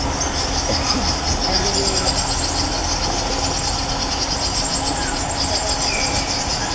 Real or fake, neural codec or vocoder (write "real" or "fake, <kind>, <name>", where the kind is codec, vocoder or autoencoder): real